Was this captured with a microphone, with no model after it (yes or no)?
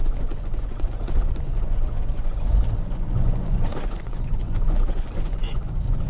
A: no